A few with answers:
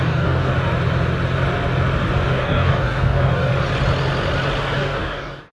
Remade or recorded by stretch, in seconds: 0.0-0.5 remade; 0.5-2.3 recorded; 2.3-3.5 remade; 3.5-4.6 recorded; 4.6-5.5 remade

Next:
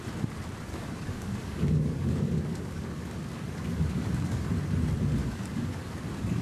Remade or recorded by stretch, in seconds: 0.0-0.7 recorded; 0.7-4.5 remade; 4.5-5.2 recorded; 5.2-6.4 remade

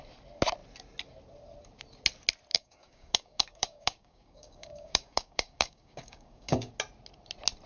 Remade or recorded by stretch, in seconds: 0.0-2.5 recorded; 2.5-6.7 remade; 6.7-7.7 recorded

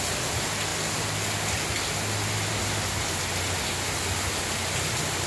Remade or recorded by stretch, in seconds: 0.0-5.3 recorded

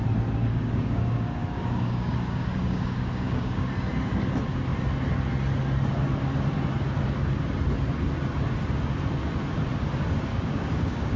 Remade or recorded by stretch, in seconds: 0.0-0.4 recorded; 0.4-3.7 remade; 3.7-10.3 recorded; 10.3-11.2 remade